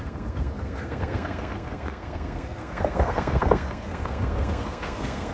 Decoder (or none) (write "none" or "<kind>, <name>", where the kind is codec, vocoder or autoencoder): codec, SNAC